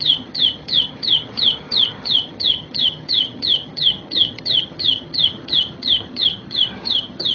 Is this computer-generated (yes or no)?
yes